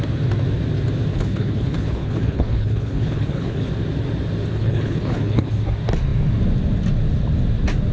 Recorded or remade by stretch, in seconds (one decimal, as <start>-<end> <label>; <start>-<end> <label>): 0.0-1.1 recorded; 1.1-3.7 remade; 3.7-4.5 recorded; 4.5-5.5 remade; 5.5-7.9 recorded